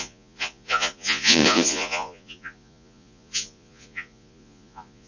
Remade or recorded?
remade